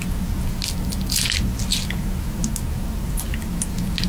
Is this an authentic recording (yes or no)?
yes